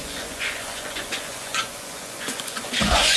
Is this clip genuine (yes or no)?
no